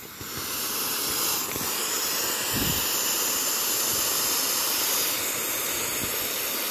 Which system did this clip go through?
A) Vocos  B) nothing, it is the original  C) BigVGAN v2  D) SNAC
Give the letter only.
B